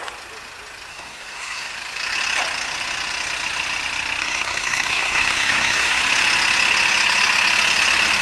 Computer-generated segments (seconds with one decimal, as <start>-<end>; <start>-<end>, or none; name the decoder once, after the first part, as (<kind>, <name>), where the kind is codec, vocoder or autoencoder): 0.9-1.7 (codec, SNAC); 4.2-6.0